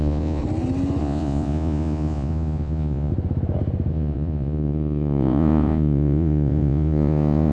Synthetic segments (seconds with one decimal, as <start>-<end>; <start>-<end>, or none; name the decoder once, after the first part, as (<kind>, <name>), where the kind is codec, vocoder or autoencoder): 0.0-0.4 (vocoder, Vocos); 1.0-3.1; 3.9-7.5